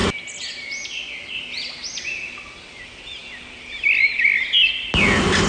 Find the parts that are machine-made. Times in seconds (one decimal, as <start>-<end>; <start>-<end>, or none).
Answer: none